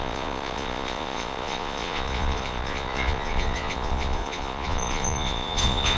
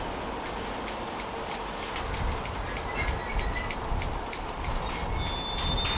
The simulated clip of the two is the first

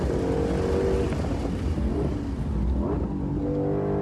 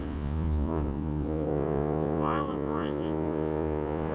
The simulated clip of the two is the second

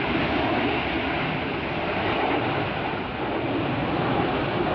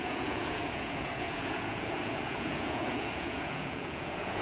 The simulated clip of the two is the second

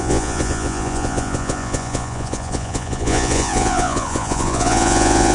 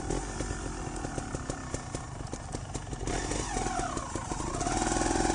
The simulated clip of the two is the first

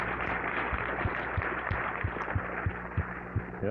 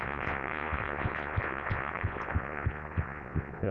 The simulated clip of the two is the second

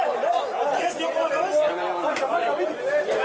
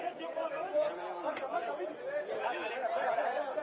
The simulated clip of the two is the second